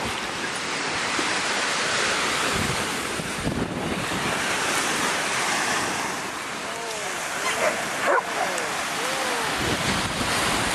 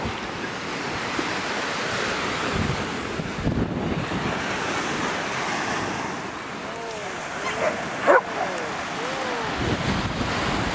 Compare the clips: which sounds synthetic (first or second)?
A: first